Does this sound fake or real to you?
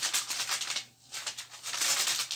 real